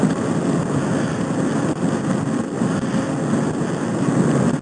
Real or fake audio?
real